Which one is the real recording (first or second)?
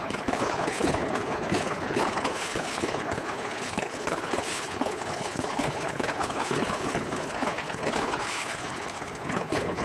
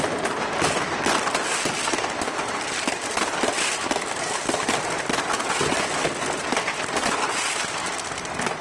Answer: second